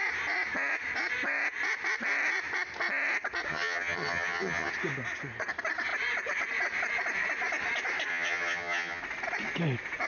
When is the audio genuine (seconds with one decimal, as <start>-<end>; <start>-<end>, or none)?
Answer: 0.0-3.5; 4.7-8.1; 9.0-10.1